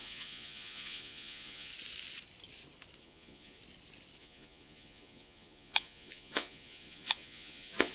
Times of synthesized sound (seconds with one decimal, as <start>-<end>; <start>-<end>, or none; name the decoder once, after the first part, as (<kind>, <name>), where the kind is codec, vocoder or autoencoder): 0.0-1.7 (vocoder, Vocos); 3.0-3.6; 4.2-7.9